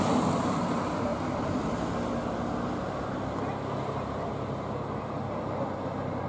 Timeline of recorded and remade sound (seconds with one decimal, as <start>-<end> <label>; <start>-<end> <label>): 0.0-6.3 recorded